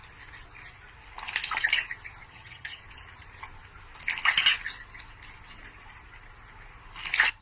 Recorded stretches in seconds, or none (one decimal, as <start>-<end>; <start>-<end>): 0.0-2.3; 2.8-7.4